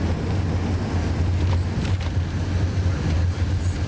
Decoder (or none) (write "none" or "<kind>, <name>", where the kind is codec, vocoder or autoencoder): none